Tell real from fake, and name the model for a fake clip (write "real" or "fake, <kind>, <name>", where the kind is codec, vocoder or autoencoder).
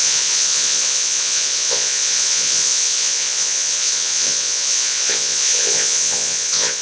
fake, vocoder, Vocos